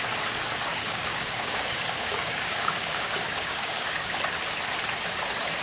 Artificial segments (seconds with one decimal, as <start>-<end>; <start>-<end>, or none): 0.7-4.1